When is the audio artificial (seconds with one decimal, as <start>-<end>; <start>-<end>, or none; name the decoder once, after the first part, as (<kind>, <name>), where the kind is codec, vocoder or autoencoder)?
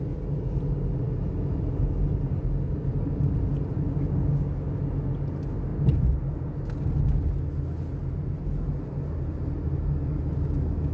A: none